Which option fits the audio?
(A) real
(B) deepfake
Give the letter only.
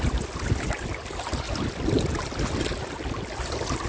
A